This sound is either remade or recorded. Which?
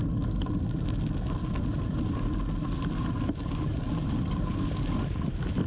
recorded